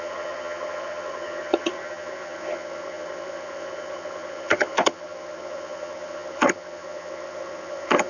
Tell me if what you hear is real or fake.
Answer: fake